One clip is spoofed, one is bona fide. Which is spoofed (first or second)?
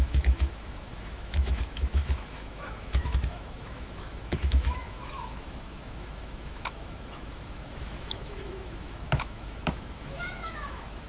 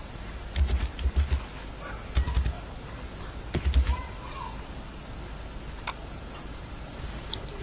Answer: first